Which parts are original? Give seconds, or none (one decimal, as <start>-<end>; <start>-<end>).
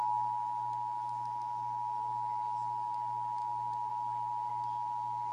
0.0-5.3